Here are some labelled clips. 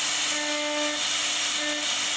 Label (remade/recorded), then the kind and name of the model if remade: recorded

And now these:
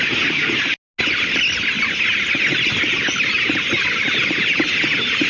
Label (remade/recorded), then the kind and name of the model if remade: recorded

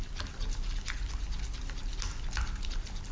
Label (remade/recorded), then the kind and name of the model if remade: recorded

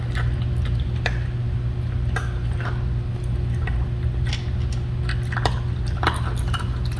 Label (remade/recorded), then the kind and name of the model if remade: recorded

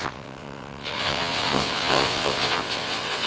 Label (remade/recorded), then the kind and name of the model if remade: remade, vocoder, WaveNeXt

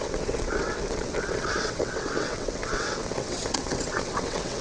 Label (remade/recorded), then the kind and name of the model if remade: remade, vocoder, WaveNeXt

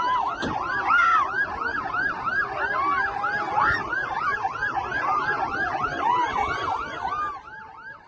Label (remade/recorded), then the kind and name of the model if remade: recorded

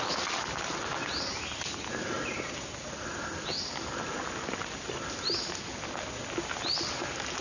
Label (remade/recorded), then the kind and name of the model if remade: recorded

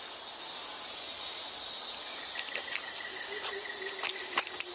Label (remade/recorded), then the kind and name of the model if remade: recorded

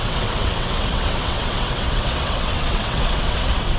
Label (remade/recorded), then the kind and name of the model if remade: remade, vocoder, WaveNeXt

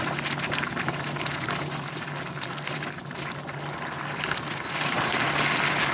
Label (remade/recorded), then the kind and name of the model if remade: recorded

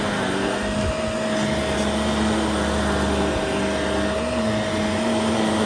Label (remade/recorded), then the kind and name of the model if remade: recorded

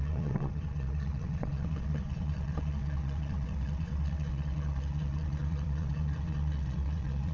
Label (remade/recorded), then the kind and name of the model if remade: remade, vocoder, WaveNeXt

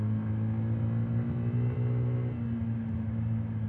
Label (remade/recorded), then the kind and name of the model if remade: recorded